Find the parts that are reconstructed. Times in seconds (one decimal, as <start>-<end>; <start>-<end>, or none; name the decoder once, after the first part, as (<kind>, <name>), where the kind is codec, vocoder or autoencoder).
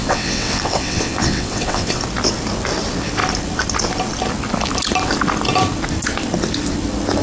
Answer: 0.0-2.0 (vocoder, WaveNeXt)